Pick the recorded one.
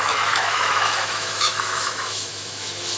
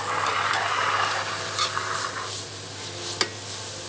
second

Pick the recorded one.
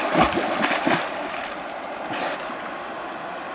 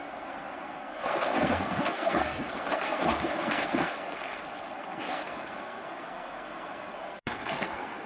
first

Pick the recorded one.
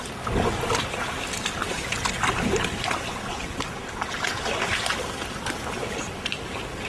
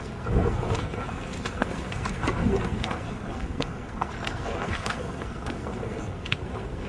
first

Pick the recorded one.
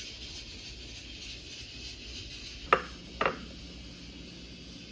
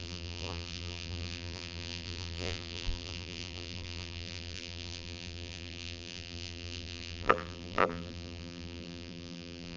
first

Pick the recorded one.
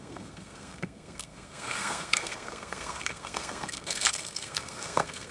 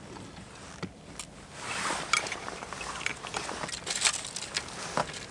second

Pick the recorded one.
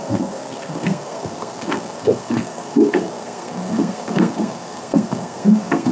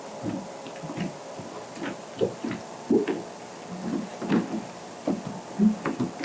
second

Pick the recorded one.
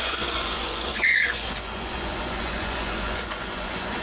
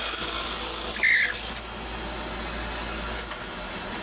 second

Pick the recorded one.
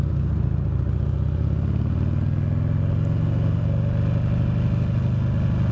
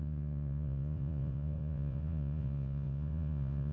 first